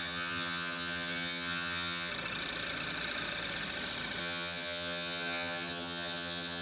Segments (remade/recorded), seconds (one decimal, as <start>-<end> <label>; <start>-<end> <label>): 0.0-2.1 remade; 2.1-4.2 recorded; 4.2-6.6 remade